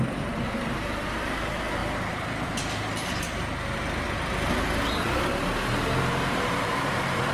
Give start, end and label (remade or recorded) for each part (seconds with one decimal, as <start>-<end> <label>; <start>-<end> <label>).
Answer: 0.0-1.8 remade; 1.8-6.0 recorded; 6.0-7.3 remade